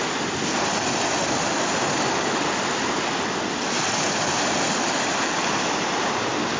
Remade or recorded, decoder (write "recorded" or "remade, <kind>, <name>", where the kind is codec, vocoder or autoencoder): recorded